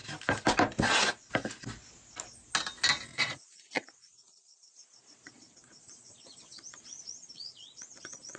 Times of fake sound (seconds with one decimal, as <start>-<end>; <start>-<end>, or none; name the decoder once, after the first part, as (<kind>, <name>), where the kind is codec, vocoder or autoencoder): 3.1-8.4 (vocoder, Vocos)